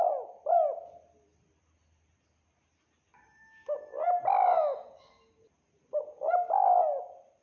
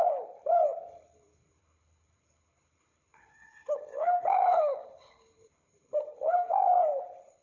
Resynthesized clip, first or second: second